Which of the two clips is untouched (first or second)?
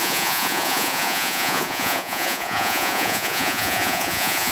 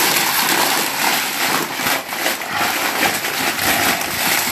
second